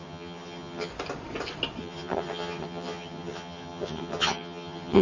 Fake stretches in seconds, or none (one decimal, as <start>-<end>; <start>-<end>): 0.0-0.9; 1.8-5.0